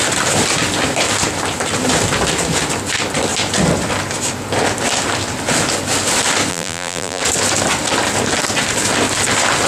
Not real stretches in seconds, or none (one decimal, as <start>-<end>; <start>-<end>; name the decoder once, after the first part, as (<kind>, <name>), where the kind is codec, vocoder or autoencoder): 6.5-7.2 (vocoder, BigVGAN v2)